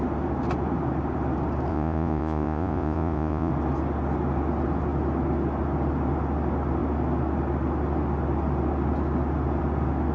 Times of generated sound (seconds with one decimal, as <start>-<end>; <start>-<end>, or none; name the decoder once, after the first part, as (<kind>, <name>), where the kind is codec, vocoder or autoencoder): 1.7-3.5 (vocoder, Vocos)